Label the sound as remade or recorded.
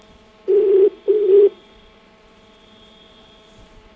remade